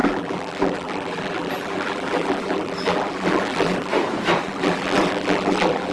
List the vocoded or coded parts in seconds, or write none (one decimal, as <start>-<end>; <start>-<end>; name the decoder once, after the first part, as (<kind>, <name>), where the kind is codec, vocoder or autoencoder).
0.0-3.9 (vocoder, BigVGAN v2); 4.4-5.9